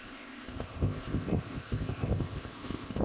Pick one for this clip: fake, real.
fake